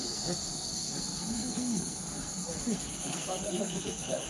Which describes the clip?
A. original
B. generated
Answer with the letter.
B